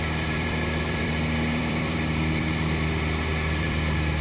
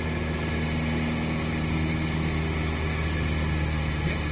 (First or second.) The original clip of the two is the second